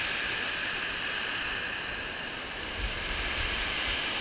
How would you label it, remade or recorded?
remade